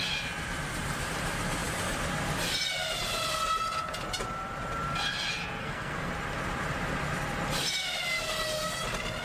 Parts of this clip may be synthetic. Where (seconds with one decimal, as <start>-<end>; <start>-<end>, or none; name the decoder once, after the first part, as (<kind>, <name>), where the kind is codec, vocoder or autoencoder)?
5.6-6.1 (codec, SNAC)